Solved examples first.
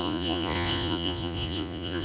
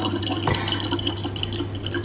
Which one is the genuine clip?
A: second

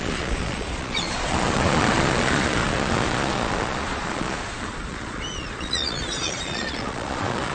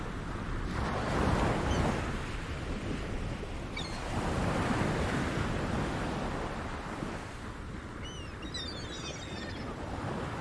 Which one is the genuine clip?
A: second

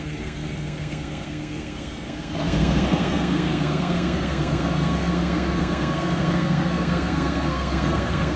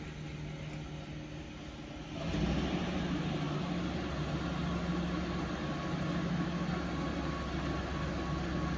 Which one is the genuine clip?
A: second